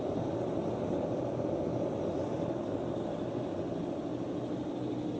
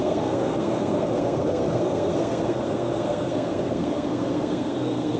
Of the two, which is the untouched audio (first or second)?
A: first